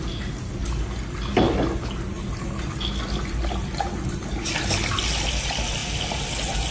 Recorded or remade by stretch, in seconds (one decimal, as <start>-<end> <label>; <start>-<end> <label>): 0.0-6.7 recorded